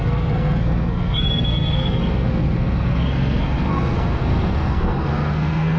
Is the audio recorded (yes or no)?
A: no